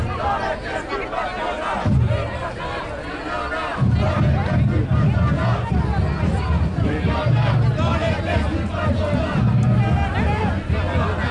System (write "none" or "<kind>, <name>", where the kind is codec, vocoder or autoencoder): none